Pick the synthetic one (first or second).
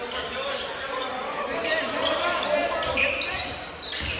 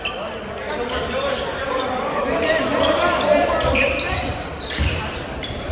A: second